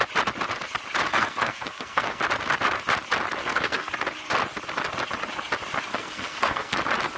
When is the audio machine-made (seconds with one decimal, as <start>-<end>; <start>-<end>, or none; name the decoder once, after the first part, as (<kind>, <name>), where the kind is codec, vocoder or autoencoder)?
1.1-2.2 (codec, SNAC); 3.4-3.9; 5.9-6.8